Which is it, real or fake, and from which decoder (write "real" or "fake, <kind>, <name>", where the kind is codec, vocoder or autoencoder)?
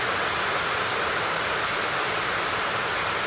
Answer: fake, vocoder, BigVGAN v2